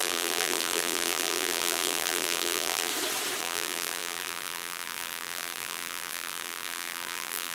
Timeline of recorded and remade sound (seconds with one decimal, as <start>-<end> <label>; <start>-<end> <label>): 0.0-2.9 remade; 2.9-3.4 recorded; 3.4-7.5 remade